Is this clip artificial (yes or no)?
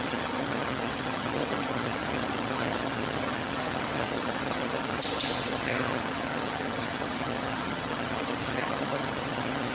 yes